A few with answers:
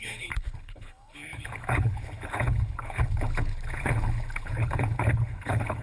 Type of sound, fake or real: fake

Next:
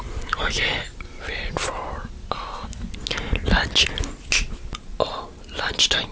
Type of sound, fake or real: real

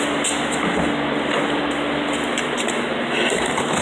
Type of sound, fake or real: real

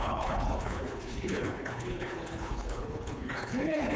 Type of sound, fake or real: fake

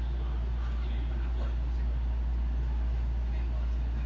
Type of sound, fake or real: real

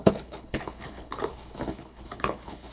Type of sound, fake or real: fake